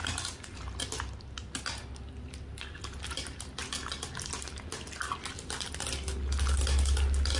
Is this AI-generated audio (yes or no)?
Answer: no